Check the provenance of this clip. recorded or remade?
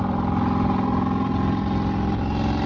recorded